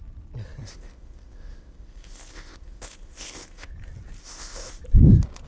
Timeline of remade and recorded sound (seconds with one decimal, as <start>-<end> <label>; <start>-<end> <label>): 0.0-0.6 recorded; 0.6-3.7 remade; 3.7-4.2 recorded; 4.2-4.8 remade; 4.8-5.5 recorded